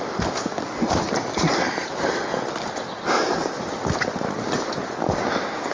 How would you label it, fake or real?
real